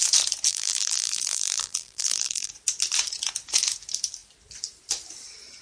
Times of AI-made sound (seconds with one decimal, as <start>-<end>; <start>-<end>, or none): 0.5-2.5